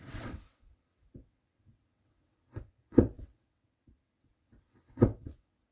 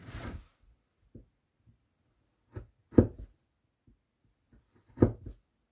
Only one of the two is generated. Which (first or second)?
first